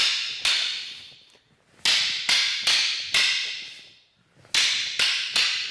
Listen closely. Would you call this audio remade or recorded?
recorded